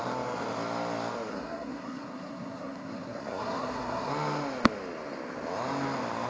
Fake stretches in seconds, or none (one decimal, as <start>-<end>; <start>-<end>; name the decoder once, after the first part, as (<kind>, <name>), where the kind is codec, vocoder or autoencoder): 1.3-4.1 (codec, SNAC)